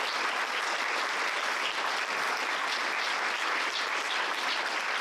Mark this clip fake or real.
real